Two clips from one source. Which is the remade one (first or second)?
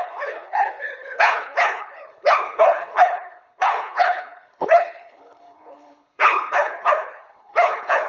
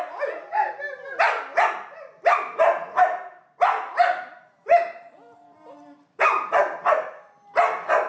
first